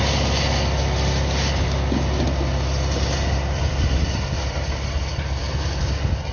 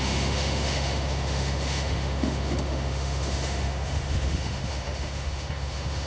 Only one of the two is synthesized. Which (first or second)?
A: second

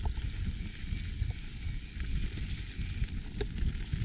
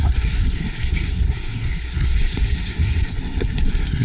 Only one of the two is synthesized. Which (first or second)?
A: second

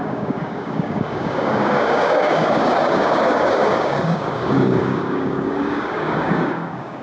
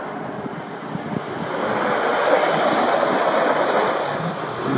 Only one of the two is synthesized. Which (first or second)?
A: first